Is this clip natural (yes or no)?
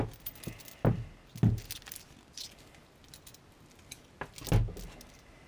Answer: yes